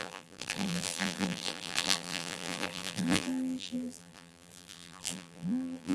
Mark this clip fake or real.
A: fake